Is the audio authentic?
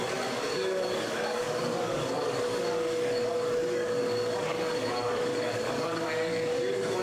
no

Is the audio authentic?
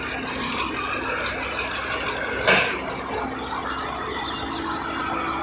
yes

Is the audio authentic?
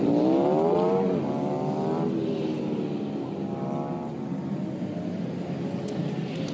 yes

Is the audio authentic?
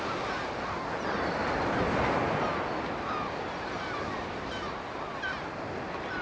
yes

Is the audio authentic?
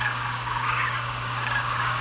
no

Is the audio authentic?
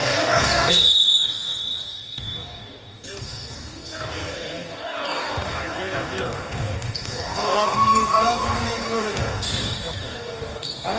no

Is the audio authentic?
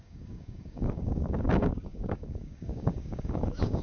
no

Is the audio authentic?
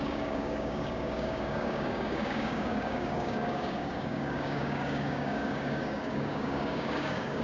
no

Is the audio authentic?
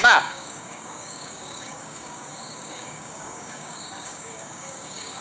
no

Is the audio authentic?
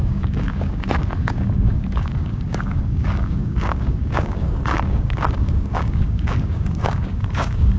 no